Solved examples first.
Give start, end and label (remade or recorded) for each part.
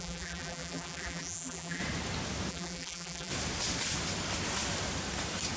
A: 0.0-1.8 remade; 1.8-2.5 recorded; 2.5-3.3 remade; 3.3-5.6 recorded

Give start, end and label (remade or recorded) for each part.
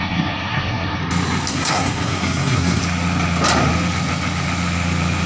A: 0.0-1.0 remade; 1.0-1.5 recorded; 1.5-2.8 remade; 2.8-5.3 recorded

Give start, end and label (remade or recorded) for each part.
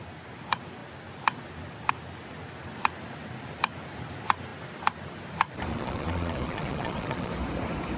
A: 0.0-5.7 recorded; 5.7-7.3 remade; 7.3-8.0 recorded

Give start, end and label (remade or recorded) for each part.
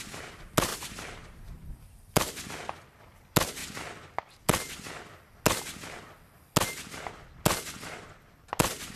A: 0.0-0.7 recorded; 0.7-2.5 remade; 2.5-9.0 recorded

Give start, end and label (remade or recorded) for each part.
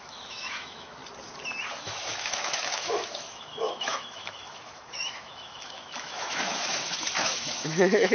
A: 0.0-1.0 remade; 1.0-1.7 recorded; 1.7-8.1 remade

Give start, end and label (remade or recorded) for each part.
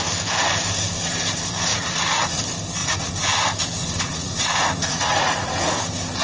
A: 0.0-1.7 recorded; 1.7-2.4 remade; 2.4-2.8 recorded; 2.8-3.4 remade; 3.4-3.8 recorded; 3.8-5.7 remade; 5.7-6.2 recorded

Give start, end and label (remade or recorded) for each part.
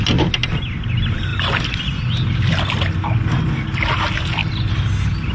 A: 0.0-5.3 recorded